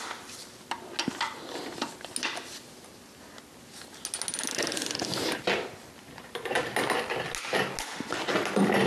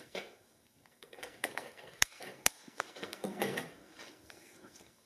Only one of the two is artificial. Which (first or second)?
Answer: second